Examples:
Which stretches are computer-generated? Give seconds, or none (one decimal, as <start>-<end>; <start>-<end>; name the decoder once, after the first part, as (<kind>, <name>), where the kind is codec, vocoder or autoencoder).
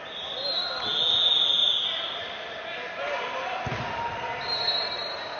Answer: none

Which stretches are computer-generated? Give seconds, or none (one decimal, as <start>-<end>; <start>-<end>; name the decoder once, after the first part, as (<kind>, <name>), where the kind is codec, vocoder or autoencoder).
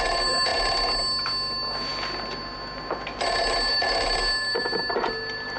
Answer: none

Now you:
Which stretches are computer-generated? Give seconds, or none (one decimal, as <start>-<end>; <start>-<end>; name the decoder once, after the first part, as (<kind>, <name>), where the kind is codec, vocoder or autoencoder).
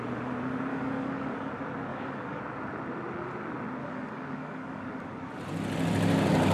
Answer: 0.7-1.5 (codec, DAC); 1.9-2.4; 3.8-5.3